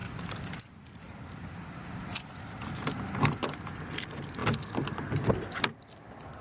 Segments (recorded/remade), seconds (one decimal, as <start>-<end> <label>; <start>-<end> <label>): 0.0-6.4 recorded